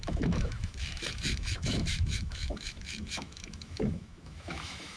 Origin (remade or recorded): remade